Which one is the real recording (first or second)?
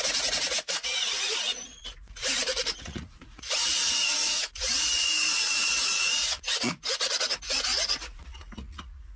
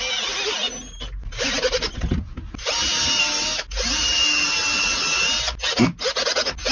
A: second